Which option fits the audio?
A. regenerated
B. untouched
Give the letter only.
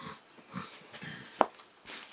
B